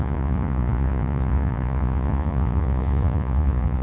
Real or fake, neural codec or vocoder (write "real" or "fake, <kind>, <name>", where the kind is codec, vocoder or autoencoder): fake, vocoder, Vocos